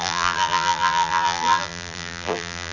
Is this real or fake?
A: fake